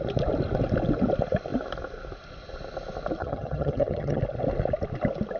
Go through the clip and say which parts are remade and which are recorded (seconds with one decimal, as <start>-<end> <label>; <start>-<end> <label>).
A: 0.0-3.2 recorded; 3.2-4.2 remade; 4.2-5.4 recorded